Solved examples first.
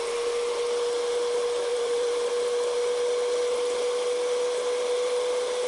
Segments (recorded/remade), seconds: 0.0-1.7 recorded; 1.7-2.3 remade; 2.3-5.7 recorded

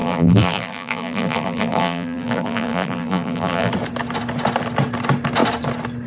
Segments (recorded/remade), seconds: 0.0-3.7 remade; 3.7-6.1 recorded